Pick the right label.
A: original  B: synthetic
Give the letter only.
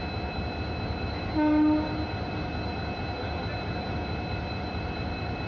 A